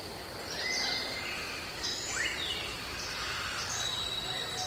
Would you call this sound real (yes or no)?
yes